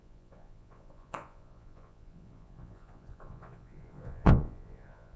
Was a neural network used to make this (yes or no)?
yes